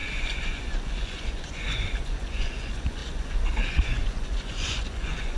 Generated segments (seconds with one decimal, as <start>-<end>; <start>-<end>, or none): 0.0-5.4